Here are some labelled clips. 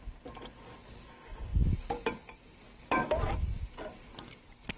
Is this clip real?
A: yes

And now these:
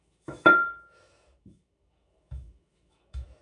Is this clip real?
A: no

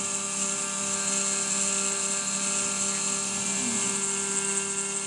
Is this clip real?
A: yes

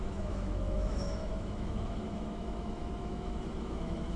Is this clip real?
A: no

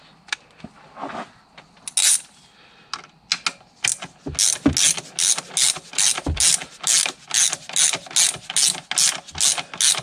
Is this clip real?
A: yes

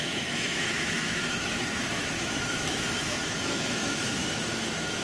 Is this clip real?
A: no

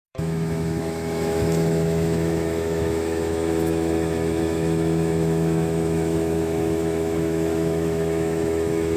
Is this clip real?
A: no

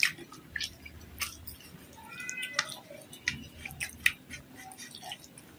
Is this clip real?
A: yes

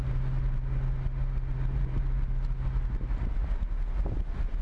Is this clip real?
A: yes